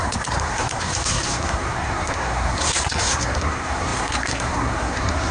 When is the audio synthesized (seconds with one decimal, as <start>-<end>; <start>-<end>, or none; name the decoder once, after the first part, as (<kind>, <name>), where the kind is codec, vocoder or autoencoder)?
0.0-5.3 (codec, SNAC)